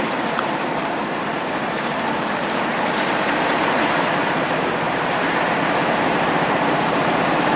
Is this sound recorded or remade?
remade